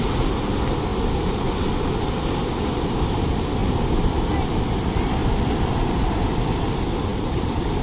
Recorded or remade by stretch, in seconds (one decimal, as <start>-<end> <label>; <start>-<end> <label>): 0.0-3.6 recorded; 3.6-4.8 remade; 4.8-5.2 recorded; 5.2-5.7 remade; 5.7-7.1 recorded; 7.1-7.8 remade